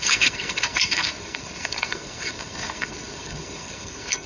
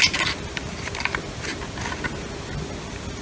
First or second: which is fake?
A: first